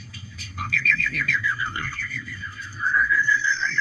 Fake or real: fake